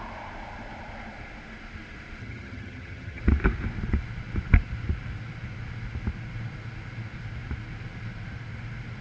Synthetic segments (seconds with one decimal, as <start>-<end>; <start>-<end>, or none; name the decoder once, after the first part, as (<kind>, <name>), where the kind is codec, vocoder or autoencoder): 2.2-3.2 (vocoder, HiFi-GAN)